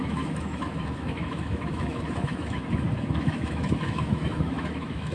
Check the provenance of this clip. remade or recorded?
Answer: remade